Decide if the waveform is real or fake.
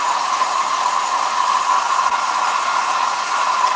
fake